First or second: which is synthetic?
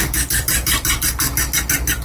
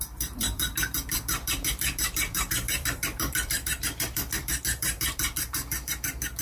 second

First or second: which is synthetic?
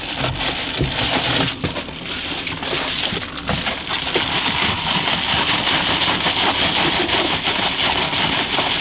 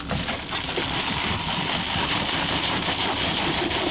first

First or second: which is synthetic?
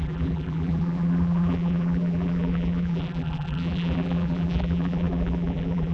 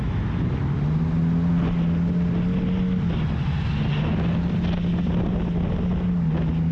first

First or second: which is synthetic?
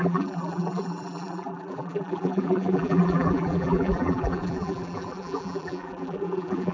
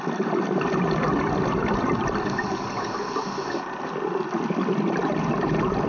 first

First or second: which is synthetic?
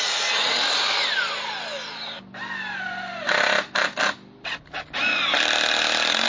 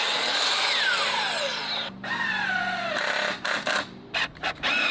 second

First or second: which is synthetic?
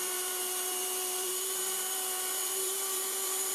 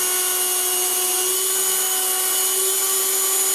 first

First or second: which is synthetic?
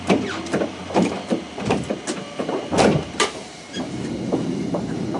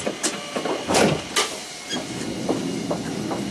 first